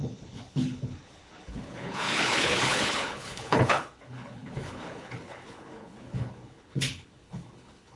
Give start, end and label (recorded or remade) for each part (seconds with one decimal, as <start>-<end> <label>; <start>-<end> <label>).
0.0-8.0 remade